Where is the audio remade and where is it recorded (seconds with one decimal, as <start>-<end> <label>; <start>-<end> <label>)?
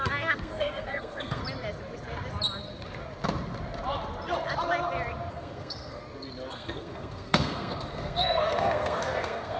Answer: 0.0-1.4 remade; 1.4-5.3 recorded; 5.3-6.0 remade; 6.0-6.5 recorded; 6.5-9.6 remade